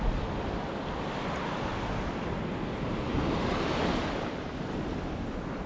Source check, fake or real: real